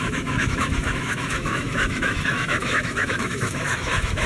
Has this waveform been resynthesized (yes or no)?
yes